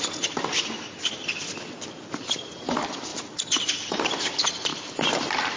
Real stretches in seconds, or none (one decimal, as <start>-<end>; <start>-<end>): 0.0-5.6